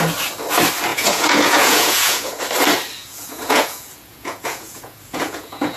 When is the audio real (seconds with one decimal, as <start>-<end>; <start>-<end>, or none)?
0.0-0.9; 2.4-3.0